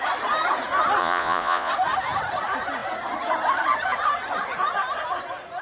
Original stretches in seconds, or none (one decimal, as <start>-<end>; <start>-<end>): 0.0-1.0; 1.7-5.6